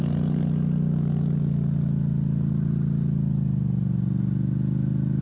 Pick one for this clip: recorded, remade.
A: recorded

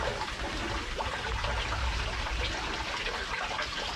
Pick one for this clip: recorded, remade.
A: recorded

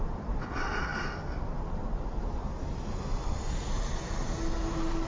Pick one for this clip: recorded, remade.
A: recorded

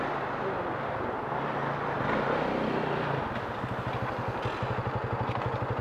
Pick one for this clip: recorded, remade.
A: recorded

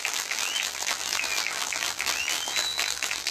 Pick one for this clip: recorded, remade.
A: remade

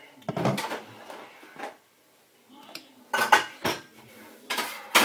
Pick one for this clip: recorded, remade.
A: remade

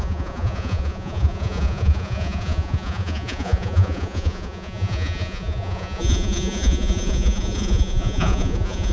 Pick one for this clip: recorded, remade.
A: remade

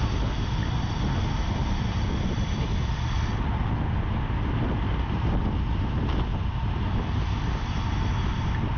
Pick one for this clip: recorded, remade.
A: recorded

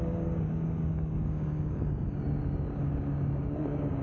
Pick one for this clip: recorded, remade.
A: remade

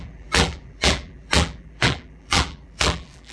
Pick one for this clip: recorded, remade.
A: remade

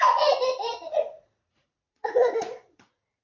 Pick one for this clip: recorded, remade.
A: remade